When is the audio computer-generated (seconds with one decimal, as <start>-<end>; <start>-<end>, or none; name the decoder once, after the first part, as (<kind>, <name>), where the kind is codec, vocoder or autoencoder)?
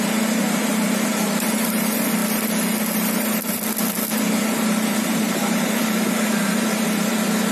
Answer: 0.0-2.2 (vocoder, BigVGAN v2); 4.4-7.5